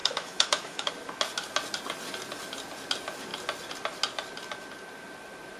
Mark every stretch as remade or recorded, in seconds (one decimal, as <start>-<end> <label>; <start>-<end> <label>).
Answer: 0.0-0.9 remade; 0.9-5.6 recorded